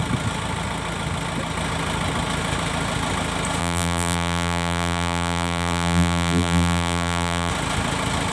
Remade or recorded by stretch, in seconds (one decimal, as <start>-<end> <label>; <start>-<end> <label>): 0.0-3.6 recorded; 3.6-7.5 remade; 7.5-8.3 recorded